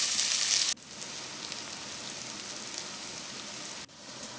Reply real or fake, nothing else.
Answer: real